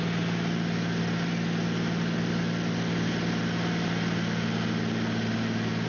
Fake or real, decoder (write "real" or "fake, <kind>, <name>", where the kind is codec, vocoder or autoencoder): real